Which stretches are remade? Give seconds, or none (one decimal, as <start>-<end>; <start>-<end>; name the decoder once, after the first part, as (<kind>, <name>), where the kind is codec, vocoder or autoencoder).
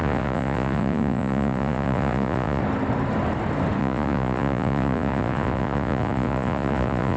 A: 0.0-2.6 (vocoder, Vocos); 3.8-7.2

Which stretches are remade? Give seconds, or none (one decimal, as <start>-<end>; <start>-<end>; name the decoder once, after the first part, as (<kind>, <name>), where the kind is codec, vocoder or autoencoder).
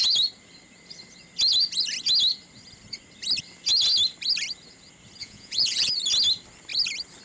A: 5.2-5.9 (vocoder, Vocos)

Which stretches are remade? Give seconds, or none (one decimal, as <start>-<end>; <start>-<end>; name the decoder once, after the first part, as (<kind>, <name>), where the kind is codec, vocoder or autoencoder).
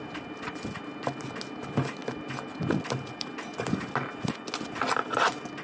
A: none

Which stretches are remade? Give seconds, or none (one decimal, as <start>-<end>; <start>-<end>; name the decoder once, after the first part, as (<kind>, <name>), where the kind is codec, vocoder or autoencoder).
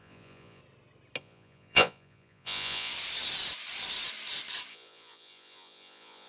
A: 0.0-0.6 (vocoder, Vocos); 1.2-2.9; 4.7-6.3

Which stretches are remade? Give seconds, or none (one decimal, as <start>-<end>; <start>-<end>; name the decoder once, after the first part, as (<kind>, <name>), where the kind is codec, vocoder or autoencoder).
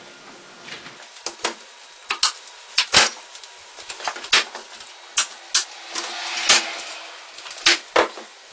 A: none